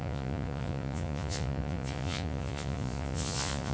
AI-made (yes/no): yes